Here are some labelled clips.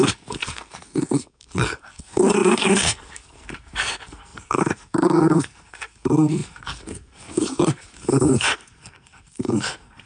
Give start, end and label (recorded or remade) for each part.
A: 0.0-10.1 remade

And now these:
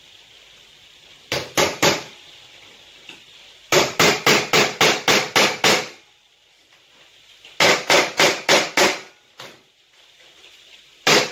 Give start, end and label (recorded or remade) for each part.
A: 0.0-11.3 recorded

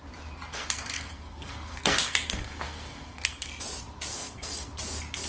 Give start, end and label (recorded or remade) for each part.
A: 0.0-0.5 recorded; 0.5-3.5 remade; 3.5-4.1 recorded; 4.1-4.7 remade; 4.7-5.3 recorded

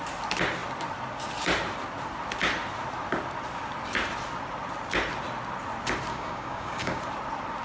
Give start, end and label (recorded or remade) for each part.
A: 0.0-6.1 recorded; 6.1-7.0 remade; 7.0-7.6 recorded

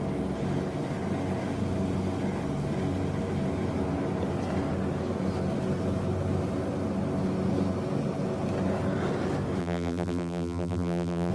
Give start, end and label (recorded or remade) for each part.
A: 0.0-9.6 recorded; 9.6-11.3 remade

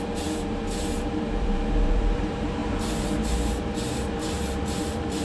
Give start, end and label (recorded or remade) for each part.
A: 0.0-5.2 remade